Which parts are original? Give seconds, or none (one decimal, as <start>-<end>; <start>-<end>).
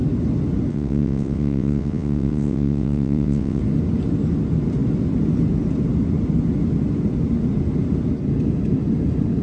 0.0-0.7; 3.6-9.4